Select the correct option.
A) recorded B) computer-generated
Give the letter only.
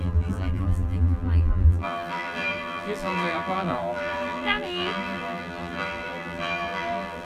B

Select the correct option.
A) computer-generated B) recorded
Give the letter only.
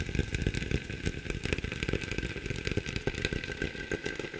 B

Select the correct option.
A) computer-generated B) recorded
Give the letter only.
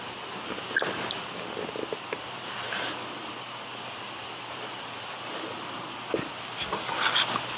B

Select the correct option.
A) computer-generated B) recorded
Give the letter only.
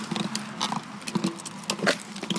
B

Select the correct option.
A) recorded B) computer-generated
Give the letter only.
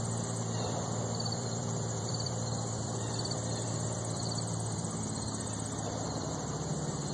B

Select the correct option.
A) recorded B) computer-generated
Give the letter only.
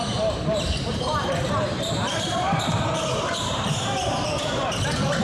B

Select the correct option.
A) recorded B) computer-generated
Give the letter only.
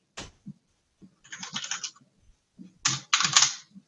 A